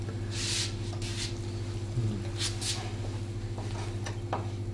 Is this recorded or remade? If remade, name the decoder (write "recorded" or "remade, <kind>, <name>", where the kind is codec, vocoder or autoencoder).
recorded